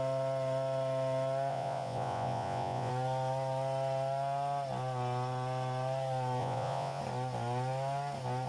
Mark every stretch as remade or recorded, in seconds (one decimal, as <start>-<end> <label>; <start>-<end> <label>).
0.0-1.5 recorded; 1.5-2.9 remade; 2.9-6.4 recorded; 6.4-7.0 remade; 7.0-8.5 recorded